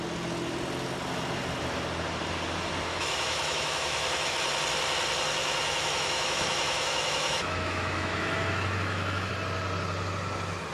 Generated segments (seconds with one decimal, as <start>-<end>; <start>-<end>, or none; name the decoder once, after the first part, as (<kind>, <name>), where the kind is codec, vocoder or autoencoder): 2.9-4.3 (autoencoder, DAC-VAE); 5.4-9.3